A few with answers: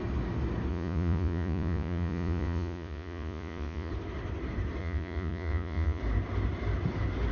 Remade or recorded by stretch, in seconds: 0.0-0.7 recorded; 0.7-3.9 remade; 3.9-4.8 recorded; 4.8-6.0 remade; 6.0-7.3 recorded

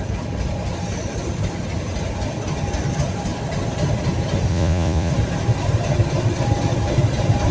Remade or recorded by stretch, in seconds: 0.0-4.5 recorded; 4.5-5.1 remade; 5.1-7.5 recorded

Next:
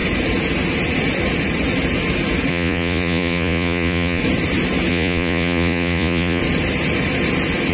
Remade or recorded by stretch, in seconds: 0.0-2.5 recorded; 2.5-4.2 remade; 4.2-4.9 recorded; 4.9-6.4 remade; 6.4-7.7 recorded

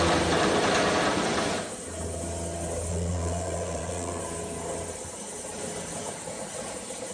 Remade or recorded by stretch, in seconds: 0.0-2.9 recorded; 2.9-4.2 remade; 4.2-7.1 recorded